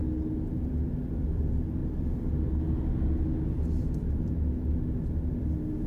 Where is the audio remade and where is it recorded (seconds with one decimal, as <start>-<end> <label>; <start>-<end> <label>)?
0.0-5.9 recorded